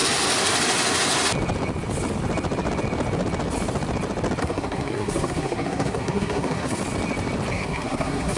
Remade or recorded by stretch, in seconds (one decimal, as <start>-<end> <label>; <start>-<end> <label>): 0.0-4.4 recorded; 4.4-6.8 remade; 6.8-7.5 recorded; 7.5-8.4 remade